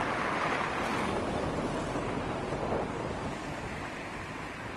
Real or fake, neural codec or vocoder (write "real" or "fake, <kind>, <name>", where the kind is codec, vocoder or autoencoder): real